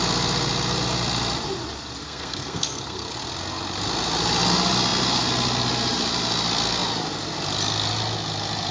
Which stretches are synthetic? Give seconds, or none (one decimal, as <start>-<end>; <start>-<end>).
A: 2.0-3.1